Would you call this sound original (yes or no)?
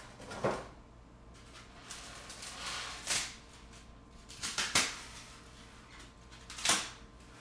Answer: yes